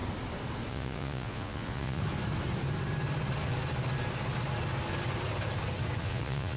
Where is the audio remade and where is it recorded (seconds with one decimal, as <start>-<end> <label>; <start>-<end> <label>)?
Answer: 0.0-0.7 recorded; 0.7-2.0 remade; 2.0-6.0 recorded; 6.0-6.6 remade